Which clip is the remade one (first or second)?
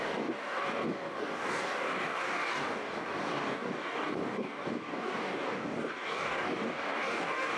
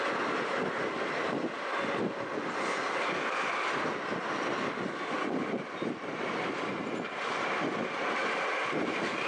first